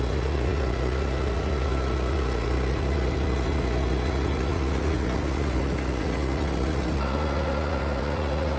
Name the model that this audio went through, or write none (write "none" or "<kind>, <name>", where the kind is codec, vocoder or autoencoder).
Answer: vocoder, Vocos